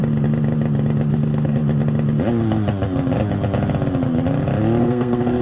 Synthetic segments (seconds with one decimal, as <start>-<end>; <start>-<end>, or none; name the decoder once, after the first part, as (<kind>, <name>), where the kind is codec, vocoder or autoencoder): 1.1-1.6 (codec, SNAC); 4.8-5.4